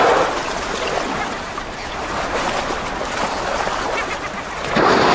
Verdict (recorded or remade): recorded